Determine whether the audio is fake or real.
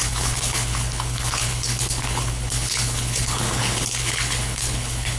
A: fake